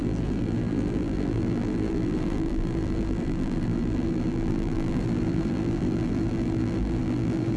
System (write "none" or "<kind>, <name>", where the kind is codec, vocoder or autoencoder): vocoder, BigVGAN v2